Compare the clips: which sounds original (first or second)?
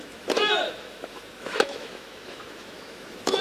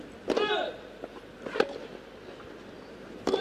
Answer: second